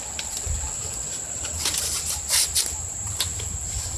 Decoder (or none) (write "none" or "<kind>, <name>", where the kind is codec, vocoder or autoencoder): none